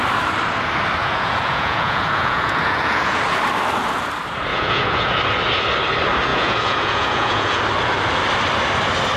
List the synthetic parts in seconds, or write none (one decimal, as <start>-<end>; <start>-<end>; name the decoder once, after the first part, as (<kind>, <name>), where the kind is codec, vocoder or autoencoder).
1.0-3.2 (vocoder, Vocos); 4.5-5.2; 6.3-7.6